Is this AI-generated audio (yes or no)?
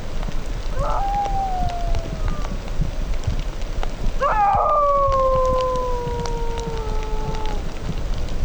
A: no